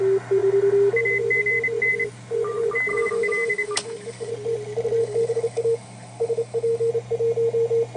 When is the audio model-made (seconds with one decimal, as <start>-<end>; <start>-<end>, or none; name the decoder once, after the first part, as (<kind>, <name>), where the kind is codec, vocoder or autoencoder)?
2.9-4.3 (codec, DAC); 5.0-6.9